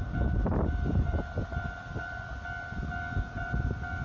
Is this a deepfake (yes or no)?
yes